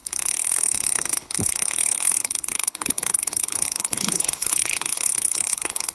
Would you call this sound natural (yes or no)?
no